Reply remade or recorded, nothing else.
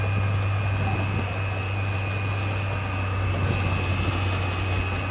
recorded